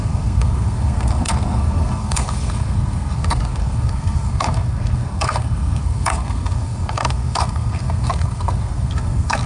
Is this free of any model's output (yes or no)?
no